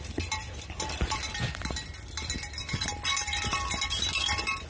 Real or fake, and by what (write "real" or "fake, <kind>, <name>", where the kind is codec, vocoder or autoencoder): real